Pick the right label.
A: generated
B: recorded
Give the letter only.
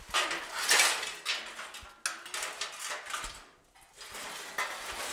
B